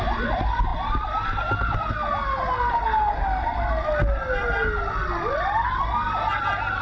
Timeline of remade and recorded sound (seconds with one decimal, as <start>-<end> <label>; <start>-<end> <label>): 0.0-6.8 recorded